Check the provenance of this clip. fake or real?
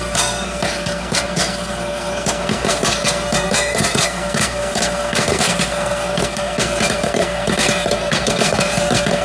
fake